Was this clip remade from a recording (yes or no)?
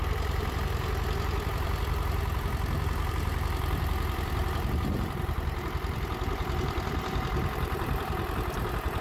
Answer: yes